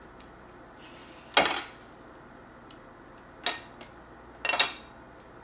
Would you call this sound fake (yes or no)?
no